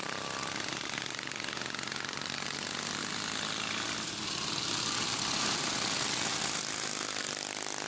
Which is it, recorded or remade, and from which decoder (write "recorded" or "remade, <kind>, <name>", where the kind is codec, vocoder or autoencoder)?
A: recorded